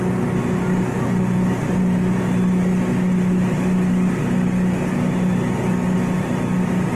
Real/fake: real